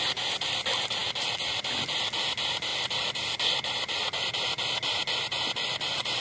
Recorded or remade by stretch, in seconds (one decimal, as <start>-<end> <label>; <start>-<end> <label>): 0.0-6.2 recorded